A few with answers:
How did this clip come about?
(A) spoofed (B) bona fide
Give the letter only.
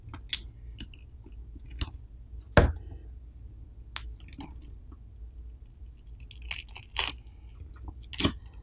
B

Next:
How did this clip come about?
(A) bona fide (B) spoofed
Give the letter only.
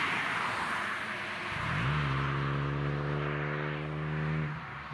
A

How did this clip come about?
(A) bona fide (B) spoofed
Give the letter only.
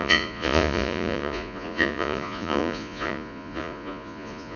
B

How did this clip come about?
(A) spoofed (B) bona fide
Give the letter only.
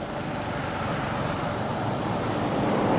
B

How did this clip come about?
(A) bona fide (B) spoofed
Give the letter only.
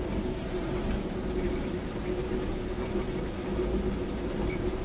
A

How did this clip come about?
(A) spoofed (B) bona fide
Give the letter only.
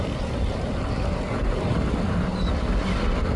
B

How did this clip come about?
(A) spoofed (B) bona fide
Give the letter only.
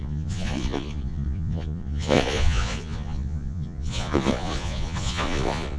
A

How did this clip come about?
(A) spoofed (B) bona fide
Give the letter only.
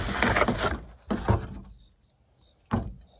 B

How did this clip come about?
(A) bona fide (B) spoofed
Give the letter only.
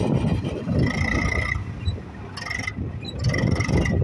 A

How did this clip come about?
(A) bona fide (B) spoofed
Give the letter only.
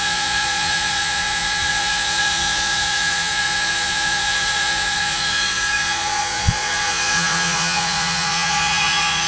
B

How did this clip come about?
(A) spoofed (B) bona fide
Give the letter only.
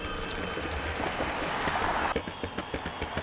B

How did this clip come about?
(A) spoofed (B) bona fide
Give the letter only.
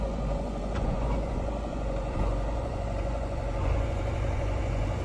A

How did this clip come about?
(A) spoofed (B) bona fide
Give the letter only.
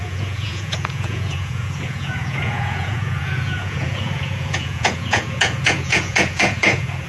A